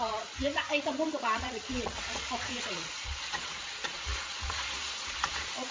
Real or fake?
fake